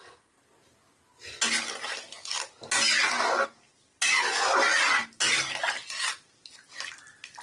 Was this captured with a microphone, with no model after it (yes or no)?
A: yes